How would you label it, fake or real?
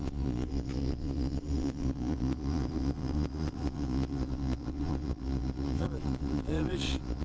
fake